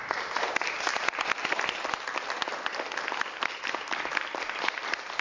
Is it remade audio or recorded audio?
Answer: recorded